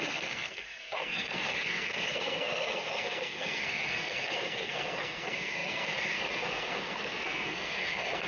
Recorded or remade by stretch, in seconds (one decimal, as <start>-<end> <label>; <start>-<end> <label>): 0.0-8.3 remade